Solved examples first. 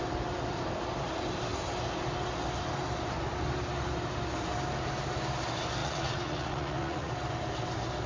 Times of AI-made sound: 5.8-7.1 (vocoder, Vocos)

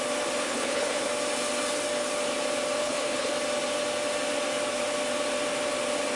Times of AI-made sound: 0.4-1.0 (codec, HILCodec); 2.8-3.3

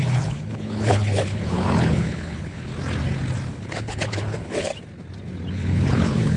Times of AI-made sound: 0.0-2.7 (codec, HILCodec); 3.5-4.7; 5.5-6.4

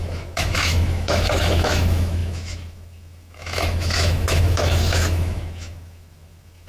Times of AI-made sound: 0.0-6.7 (autoencoder, DAC-VAE)